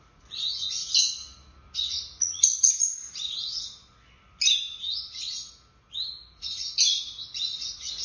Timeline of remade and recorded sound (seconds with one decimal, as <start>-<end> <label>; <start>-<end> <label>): 0.0-0.8 remade; 0.8-1.9 recorded; 1.9-3.5 remade; 3.5-6.4 recorded; 6.4-8.0 remade